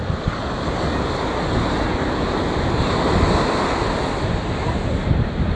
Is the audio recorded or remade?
recorded